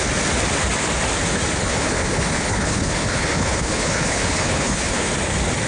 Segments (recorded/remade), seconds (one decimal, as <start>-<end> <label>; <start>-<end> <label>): 0.0-1.7 recorded; 1.7-5.1 remade; 5.1-5.7 recorded